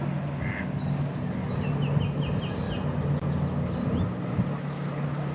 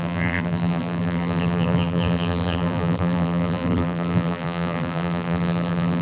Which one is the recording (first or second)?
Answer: first